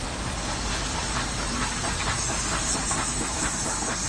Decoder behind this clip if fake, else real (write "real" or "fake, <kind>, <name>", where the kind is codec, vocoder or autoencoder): real